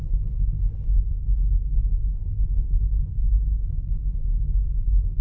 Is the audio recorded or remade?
remade